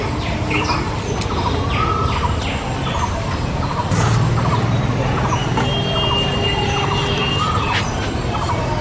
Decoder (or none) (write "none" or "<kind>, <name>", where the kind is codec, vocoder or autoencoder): none